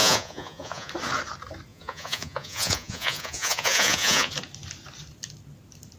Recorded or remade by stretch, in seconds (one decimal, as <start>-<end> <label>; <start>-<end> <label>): 0.0-0.9 remade; 0.9-1.7 recorded; 1.7-4.3 remade; 4.3-6.0 recorded